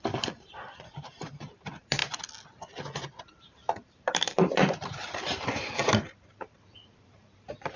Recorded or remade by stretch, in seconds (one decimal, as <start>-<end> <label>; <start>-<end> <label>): 0.0-2.0 remade; 2.0-3.2 recorded; 3.2-7.8 remade